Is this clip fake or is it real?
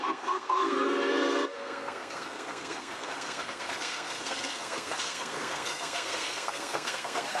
fake